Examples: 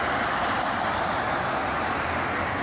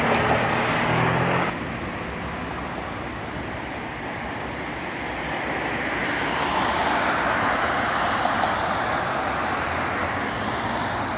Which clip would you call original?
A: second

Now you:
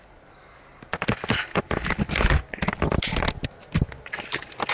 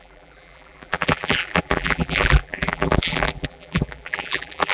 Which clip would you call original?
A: first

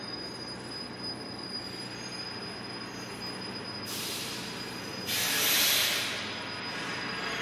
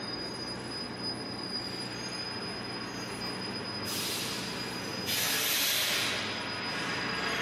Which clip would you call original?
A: second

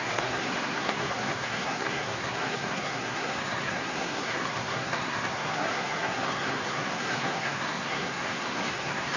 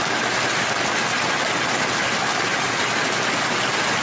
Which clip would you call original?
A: second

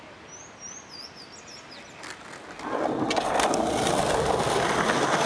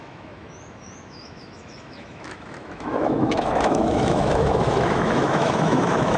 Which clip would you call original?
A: first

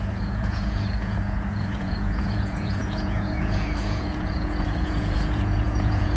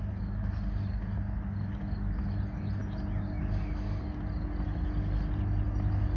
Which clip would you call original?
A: second